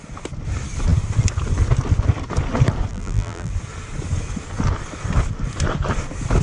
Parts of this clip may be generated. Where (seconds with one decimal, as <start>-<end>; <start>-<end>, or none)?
2.9-3.5